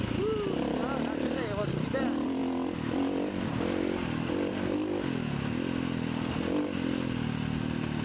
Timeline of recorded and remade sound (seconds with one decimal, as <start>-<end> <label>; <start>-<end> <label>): 0.0-8.0 recorded

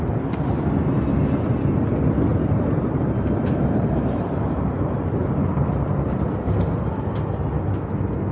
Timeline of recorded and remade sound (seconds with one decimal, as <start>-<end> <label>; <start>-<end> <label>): 0.0-2.3 recorded; 2.3-5.7 remade; 5.7-8.3 recorded

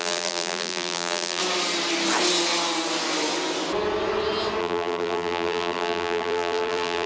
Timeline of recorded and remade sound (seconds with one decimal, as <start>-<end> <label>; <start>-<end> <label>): 0.0-1.4 remade; 1.4-4.6 recorded; 4.6-7.1 remade